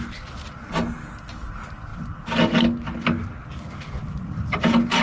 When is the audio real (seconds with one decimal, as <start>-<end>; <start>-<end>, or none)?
0.0-5.0